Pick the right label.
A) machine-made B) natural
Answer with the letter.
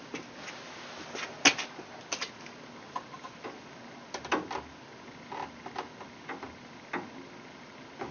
B